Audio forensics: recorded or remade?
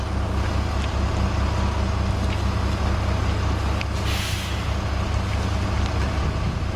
recorded